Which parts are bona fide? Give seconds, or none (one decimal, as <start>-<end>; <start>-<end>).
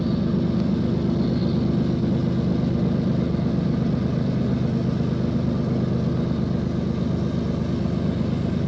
0.0-8.7